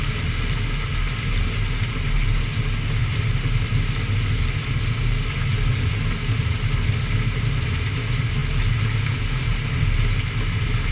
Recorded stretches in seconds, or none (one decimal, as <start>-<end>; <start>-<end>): 0.0-10.9